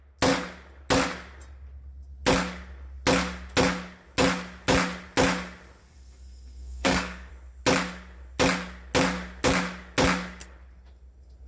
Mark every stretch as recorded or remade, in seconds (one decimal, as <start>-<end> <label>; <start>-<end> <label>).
0.0-5.8 recorded; 5.8-7.3 remade; 7.3-11.5 recorded